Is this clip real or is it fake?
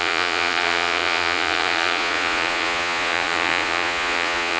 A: fake